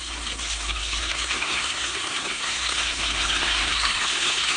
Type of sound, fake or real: fake